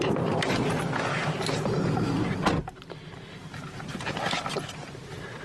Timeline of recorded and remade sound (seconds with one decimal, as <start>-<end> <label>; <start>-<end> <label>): 0.0-5.4 recorded